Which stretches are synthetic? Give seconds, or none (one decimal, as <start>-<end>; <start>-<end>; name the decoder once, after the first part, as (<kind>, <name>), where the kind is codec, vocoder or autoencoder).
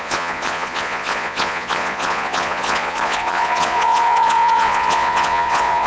0.0-5.9 (vocoder, Vocos)